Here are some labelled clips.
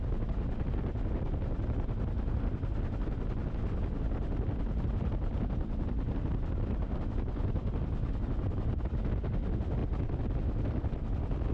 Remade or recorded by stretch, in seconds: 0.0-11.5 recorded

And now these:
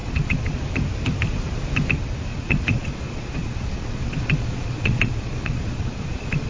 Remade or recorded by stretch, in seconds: 0.0-0.6 remade; 0.6-2.3 recorded; 2.3-6.5 remade

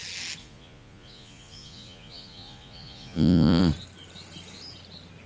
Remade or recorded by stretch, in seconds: 0.0-0.4 recorded; 0.4-3.6 remade; 3.6-5.3 recorded

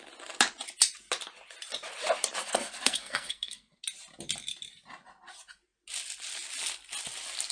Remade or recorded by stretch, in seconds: 0.0-2.4 recorded; 2.4-3.8 remade; 3.8-7.5 recorded

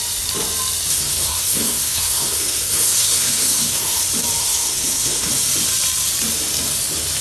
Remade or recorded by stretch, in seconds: 0.0-0.9 recorded; 0.9-4.0 remade; 4.0-4.4 recorded; 4.4-5.3 remade; 5.3-7.2 recorded

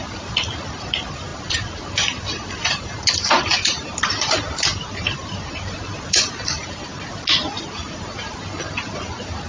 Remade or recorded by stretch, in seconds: 0.0-6.9 remade; 6.9-7.6 recorded; 7.6-9.5 remade

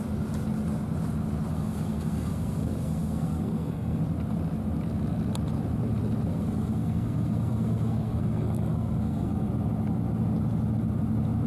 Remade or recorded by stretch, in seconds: 0.0-1.5 recorded; 1.5-4.0 remade; 4.0-6.3 recorded; 6.3-9.5 remade; 9.5-11.5 recorded

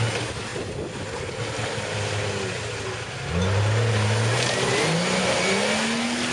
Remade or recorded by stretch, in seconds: 0.0-6.3 recorded